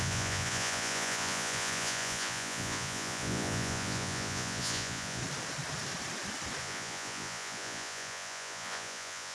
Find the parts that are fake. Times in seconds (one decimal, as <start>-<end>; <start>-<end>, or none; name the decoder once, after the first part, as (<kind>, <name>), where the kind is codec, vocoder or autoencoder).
0.0-5.2 (vocoder, Vocos); 6.6-9.3